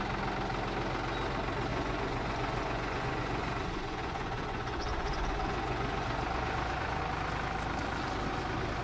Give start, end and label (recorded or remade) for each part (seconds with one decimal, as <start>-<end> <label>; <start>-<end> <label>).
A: 0.0-1.7 recorded; 1.7-7.0 remade; 7.0-8.8 recorded